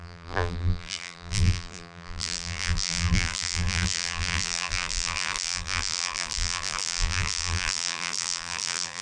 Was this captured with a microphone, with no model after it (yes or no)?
no